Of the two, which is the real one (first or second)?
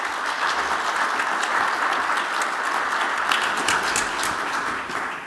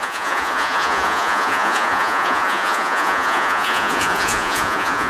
first